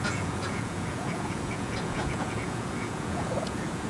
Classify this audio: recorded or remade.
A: remade